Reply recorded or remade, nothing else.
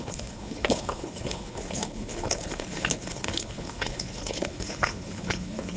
remade